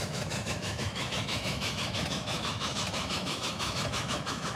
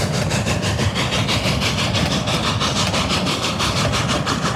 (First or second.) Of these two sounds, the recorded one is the second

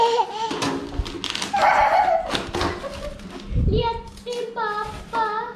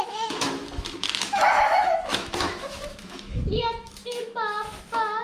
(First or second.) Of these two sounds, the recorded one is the first